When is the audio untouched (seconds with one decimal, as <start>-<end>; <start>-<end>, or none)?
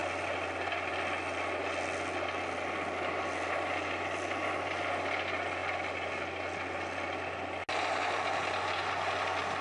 0.0-9.6